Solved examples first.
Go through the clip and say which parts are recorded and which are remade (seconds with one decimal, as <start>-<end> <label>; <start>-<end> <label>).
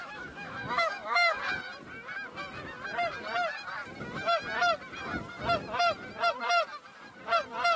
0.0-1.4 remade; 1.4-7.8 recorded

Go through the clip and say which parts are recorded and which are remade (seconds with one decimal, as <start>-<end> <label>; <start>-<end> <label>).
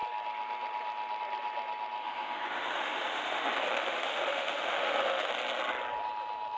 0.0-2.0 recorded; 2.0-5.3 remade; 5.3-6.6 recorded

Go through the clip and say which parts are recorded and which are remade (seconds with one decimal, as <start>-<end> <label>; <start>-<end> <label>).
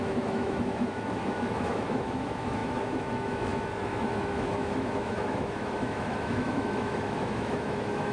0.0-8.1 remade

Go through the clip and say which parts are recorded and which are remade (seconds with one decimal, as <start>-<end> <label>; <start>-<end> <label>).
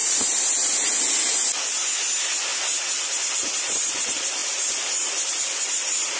0.0-6.2 recorded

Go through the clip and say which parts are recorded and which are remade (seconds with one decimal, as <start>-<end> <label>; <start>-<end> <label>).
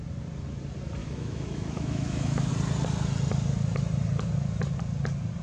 0.0-1.0 recorded; 1.0-2.5 remade; 2.5-5.4 recorded